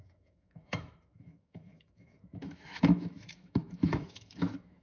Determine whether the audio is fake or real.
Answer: fake